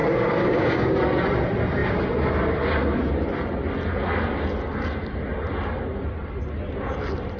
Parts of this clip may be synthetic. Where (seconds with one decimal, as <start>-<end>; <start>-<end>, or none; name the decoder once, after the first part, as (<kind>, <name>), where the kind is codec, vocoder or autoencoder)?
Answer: 0.0-1.0 (codec, DAC)